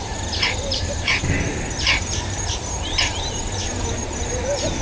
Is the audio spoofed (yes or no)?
yes